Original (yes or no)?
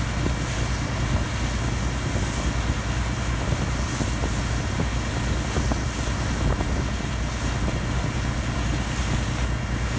yes